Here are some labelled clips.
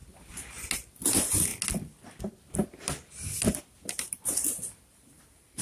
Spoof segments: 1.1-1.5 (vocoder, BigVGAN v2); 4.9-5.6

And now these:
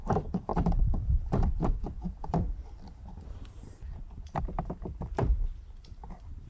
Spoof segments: 0.0-6.5 (vocoder, BigVGAN v2)

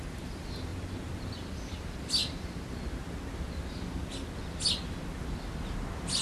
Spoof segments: none

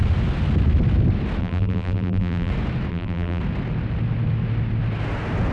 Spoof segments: 1.4-2.5 (vocoder, BigVGAN v2); 2.9-3.4

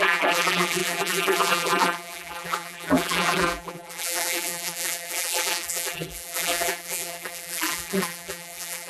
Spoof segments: 0.0-8.9 (vocoder, BigVGAN v2)